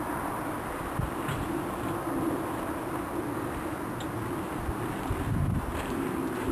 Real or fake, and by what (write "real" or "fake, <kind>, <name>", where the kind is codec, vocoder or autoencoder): real